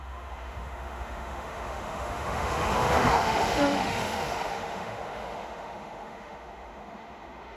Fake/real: fake